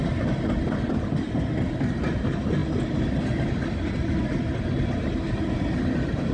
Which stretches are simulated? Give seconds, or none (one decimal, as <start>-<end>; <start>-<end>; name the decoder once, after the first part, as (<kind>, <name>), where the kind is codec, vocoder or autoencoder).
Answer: none